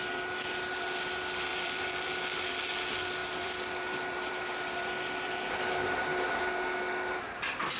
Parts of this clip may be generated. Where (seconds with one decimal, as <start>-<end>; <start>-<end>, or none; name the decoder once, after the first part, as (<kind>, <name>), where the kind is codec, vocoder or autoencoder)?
1.5-2.1 (vocoder, BigVGAN v2); 3.2-4.4